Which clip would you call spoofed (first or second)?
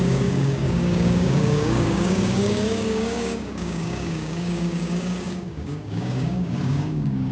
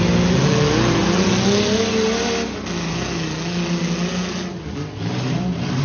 first